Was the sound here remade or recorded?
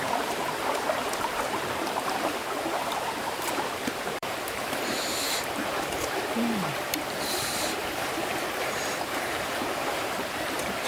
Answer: remade